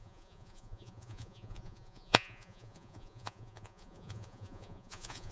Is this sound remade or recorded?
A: remade